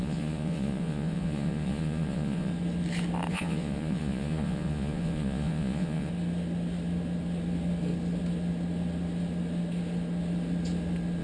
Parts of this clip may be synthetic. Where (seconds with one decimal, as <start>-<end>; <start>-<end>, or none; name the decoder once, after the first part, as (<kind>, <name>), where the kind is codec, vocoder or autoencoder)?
0.0-2.5 (vocoder, Vocos); 3.3-6.1

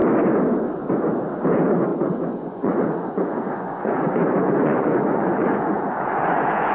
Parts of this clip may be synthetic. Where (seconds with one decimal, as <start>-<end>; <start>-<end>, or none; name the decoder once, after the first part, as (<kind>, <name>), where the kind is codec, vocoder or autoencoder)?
1.5-6.7 (vocoder, Vocos)

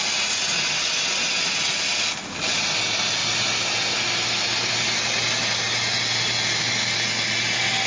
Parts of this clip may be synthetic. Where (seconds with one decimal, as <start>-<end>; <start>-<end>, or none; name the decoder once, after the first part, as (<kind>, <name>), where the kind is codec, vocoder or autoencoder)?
none

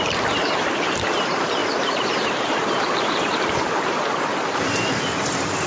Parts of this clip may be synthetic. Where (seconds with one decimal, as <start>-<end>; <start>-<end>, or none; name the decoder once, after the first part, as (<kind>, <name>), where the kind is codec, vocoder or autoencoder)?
1.6-5.0 (vocoder, BigVGAN v2)

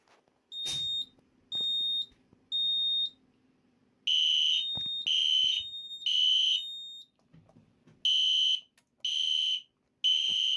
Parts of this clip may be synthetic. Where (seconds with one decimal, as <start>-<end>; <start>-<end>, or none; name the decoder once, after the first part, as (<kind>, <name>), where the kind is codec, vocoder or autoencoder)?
none

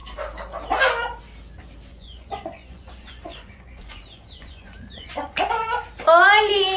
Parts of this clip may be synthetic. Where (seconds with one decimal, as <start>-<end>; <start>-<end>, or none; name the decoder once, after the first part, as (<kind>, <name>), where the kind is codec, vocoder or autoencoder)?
1.9-5.5 (vocoder, Vocos)

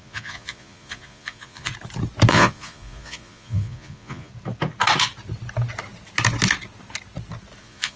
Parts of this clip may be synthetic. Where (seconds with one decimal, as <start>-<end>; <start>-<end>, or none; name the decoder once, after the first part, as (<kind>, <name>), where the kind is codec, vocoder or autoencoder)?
0.0-1.7 (vocoder, Vocos); 2.3-4.3; 7.6-8.0

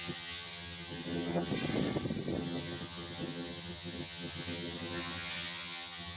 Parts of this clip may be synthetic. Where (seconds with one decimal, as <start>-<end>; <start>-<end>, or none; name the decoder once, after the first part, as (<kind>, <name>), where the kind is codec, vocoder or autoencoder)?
0.0-1.5 (vocoder, HiFi-GAN); 2.4-6.2